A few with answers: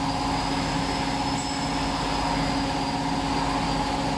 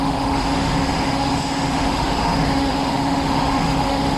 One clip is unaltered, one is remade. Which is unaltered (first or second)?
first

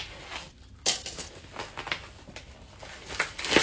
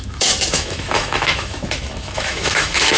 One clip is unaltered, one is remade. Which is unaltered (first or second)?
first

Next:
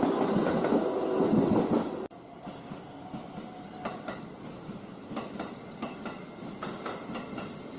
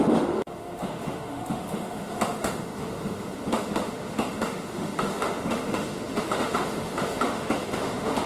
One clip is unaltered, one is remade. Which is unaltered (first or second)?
first